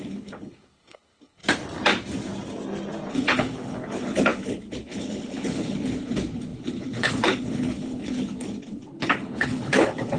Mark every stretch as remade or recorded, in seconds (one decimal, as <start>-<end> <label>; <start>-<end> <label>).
0.0-1.4 remade; 1.4-3.1 recorded; 3.1-10.2 remade